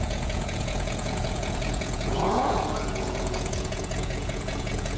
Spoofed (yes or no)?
yes